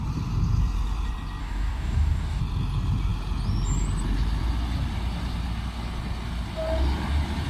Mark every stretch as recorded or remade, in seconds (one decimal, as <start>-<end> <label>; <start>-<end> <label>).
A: 0.0-1.4 recorded; 1.4-2.4 remade; 2.4-7.5 recorded